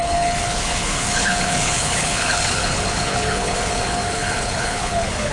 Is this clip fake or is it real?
fake